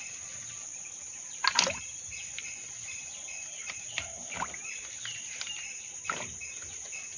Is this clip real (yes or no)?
yes